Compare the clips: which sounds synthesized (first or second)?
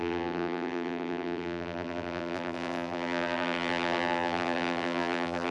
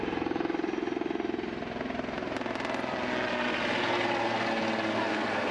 first